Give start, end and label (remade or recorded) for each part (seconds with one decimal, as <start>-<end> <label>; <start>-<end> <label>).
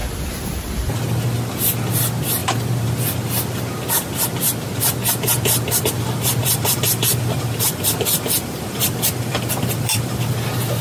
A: 0.0-6.4 recorded; 6.4-10.3 remade; 10.3-10.8 recorded